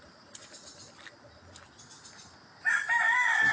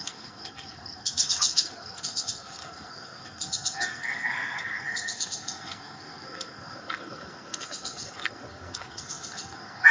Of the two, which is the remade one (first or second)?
second